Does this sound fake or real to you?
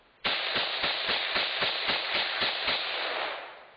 real